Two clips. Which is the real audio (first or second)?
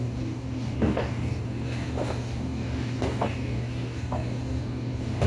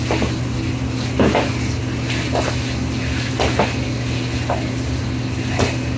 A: second